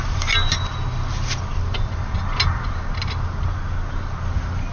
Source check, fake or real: real